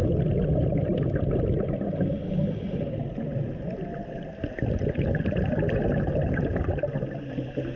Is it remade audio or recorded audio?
recorded